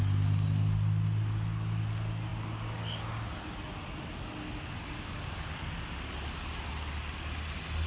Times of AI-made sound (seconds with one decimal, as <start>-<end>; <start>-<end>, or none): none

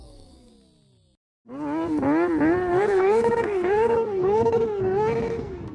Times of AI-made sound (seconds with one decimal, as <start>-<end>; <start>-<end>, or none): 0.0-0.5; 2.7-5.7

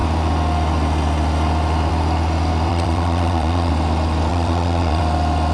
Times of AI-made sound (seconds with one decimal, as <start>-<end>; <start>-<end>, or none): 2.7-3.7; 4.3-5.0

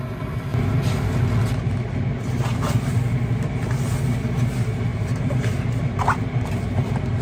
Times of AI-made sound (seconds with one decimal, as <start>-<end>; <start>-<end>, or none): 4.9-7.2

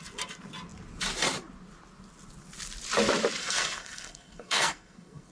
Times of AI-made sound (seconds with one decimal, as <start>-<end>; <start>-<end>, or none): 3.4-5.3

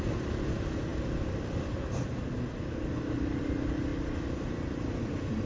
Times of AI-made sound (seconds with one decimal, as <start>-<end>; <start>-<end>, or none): none